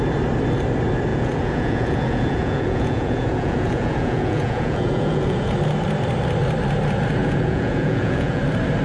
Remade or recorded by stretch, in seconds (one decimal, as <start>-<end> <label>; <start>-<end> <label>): 0.0-1.1 recorded; 1.1-5.5 remade; 5.5-7.2 recorded; 7.2-8.4 remade; 8.4-8.8 recorded